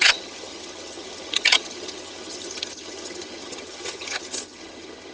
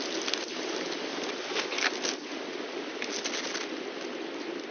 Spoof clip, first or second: first